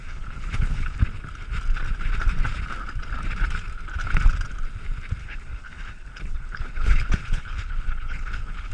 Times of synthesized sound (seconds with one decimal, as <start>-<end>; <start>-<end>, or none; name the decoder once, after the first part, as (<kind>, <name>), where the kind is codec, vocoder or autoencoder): 0.0-1.0 (codec, HILCodec); 5.2-8.7

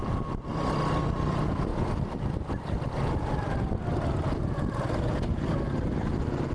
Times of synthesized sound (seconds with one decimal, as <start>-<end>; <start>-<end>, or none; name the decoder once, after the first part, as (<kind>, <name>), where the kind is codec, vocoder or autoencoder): none

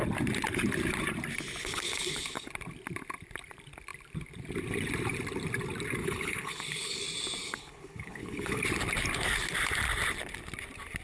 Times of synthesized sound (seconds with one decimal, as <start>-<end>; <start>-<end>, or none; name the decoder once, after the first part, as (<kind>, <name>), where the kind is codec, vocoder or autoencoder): 1.6-2.5 (codec, HILCodec); 6.0-7.0; 7.4-8.6

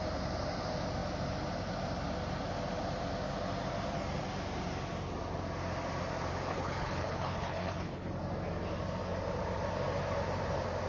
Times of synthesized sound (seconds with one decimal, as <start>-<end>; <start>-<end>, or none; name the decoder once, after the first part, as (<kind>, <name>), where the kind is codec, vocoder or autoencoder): 6.5-8.1 (codec, HILCodec)

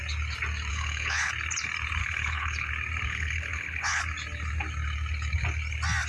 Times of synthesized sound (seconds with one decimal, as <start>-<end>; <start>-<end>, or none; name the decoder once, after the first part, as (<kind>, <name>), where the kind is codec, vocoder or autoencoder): 0.7-1.3 (codec, HILCodec); 2.0-2.7; 3.1-4.0

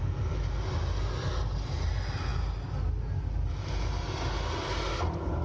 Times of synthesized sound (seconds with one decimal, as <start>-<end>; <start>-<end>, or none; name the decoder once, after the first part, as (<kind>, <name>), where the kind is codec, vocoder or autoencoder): none

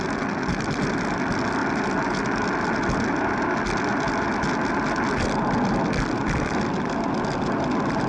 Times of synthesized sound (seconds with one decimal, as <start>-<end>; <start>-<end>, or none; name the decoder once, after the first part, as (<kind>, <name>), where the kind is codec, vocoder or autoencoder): none

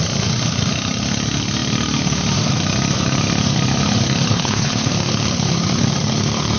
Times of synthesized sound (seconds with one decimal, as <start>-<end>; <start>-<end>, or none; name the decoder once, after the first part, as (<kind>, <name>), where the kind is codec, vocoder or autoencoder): 4.3-4.9 (codec, HILCodec)